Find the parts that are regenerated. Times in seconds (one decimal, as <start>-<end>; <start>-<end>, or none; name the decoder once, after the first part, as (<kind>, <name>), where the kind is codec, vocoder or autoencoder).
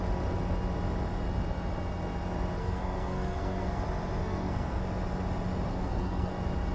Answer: 2.6-3.8 (codec, SNAC); 4.2-4.8; 5.7-6.3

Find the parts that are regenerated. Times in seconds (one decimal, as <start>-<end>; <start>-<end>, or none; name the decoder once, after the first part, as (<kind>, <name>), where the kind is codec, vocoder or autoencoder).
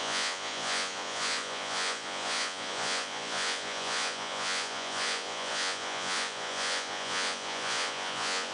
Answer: 0.0-8.5 (vocoder, Vocos)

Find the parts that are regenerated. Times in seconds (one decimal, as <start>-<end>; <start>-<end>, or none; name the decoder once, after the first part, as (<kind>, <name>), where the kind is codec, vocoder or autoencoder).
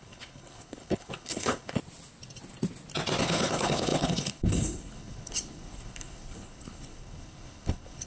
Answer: 0.0-1.8 (codec, HILCodec); 3.2-8.1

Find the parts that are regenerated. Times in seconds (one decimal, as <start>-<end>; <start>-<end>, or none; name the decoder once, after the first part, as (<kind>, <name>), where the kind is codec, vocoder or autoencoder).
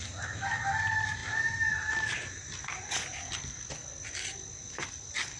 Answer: none